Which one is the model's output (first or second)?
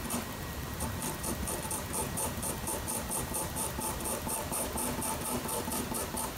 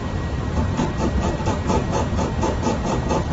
first